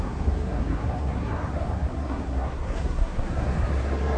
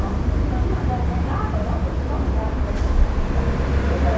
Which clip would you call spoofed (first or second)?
first